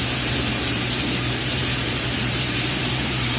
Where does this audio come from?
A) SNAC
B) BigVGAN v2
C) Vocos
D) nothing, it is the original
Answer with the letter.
B